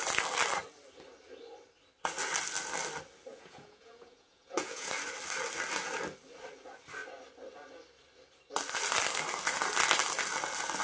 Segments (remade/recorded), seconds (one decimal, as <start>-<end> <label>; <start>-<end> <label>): 0.0-3.3 recorded; 3.3-4.9 remade; 4.9-10.8 recorded